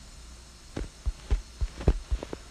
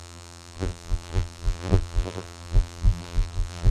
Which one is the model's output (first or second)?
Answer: second